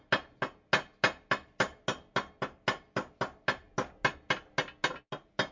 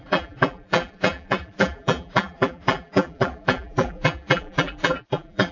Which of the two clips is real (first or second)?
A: first